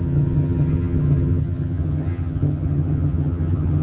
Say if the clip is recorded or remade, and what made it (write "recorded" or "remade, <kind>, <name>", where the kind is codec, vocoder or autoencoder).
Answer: remade, vocoder, HiFi-GAN